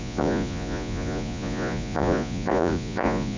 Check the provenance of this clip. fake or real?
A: fake